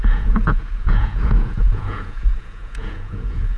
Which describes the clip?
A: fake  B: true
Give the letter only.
A